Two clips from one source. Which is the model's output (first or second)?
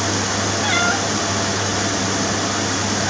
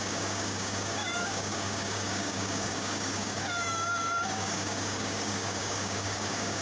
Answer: second